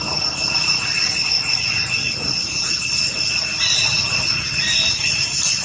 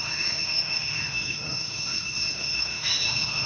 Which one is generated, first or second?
second